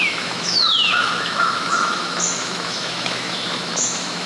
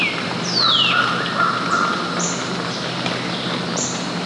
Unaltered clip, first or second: second